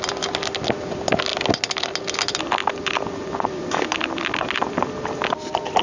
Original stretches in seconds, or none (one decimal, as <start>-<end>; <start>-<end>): 0.0-5.8